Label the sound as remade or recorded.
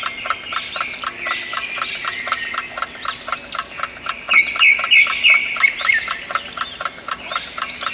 recorded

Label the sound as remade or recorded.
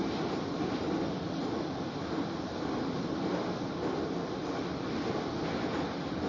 recorded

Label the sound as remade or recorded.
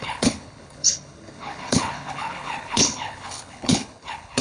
remade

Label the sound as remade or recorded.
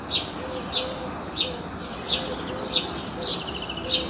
recorded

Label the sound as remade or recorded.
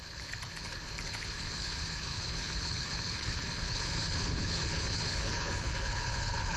remade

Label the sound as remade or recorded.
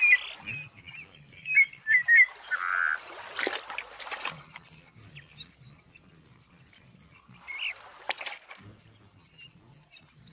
recorded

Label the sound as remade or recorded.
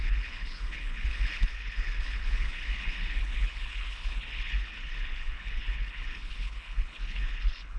remade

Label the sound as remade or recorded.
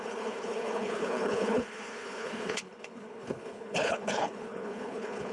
remade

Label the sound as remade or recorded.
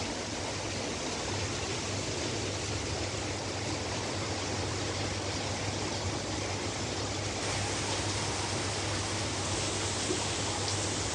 recorded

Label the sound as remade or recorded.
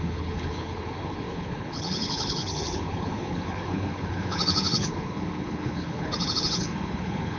remade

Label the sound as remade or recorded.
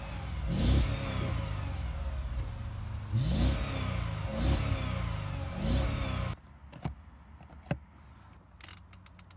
recorded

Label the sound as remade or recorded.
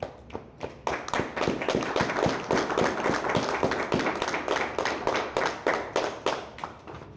recorded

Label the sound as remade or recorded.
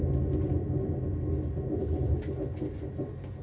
recorded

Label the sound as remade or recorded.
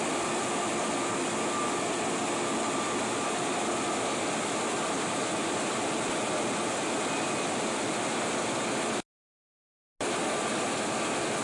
recorded